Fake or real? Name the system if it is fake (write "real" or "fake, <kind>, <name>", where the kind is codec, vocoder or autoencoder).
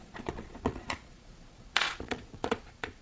fake, vocoder, Vocos